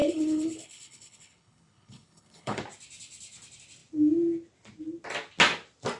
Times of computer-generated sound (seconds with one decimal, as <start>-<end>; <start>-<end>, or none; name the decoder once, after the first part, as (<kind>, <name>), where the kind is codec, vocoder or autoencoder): 0.0-2.6 (codec, HILCodec)